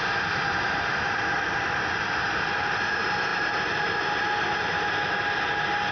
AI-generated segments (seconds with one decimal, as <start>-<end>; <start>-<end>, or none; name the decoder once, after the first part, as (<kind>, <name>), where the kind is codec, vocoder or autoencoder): none